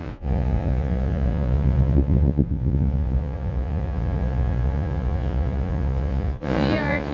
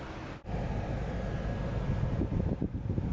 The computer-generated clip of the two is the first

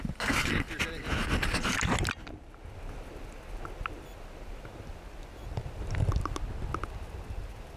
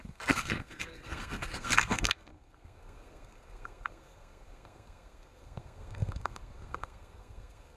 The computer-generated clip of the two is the second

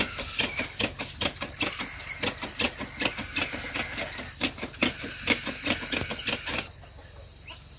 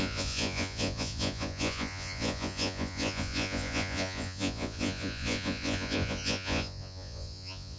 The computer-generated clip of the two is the second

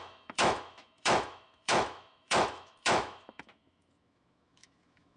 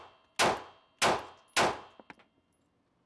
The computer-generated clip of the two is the first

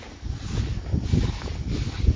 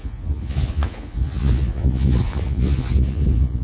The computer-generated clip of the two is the second